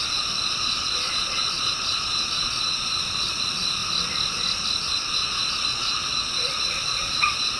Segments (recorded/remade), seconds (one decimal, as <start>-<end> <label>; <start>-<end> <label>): 0.0-3.8 remade; 3.8-4.9 recorded; 4.9-7.6 remade